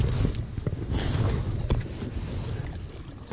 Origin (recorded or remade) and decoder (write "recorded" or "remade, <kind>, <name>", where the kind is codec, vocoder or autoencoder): recorded